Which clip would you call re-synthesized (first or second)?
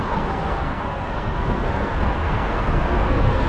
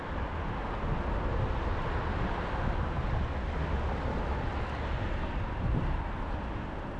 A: first